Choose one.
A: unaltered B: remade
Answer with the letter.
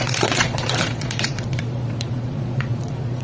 B